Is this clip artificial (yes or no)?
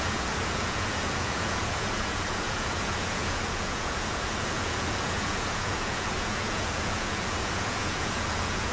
yes